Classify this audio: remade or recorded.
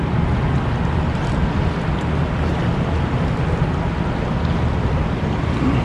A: recorded